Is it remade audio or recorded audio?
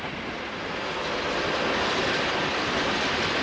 recorded